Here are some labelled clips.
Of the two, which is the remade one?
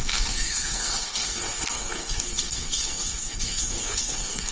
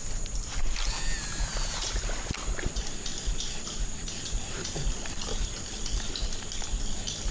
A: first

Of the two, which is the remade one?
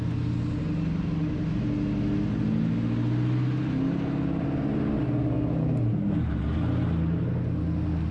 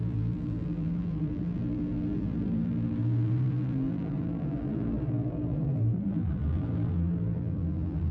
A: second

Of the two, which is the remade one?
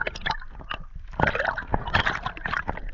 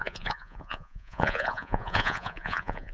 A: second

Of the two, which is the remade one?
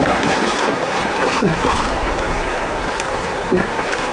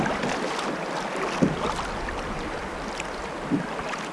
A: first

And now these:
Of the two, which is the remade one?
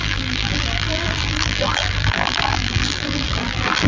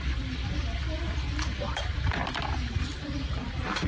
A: first